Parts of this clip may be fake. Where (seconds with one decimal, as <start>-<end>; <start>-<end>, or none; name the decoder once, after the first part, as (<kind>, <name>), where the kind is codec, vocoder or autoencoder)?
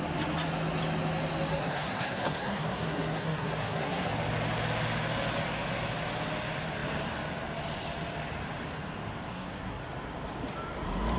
1.6-4.1 (codec, SNAC); 9.3-9.8